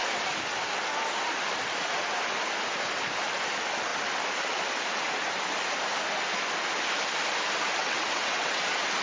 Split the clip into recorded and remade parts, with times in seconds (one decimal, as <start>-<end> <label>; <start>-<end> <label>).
0.0-7.8 recorded; 7.8-8.6 remade; 8.6-9.0 recorded